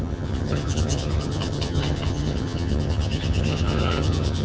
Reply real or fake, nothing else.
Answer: fake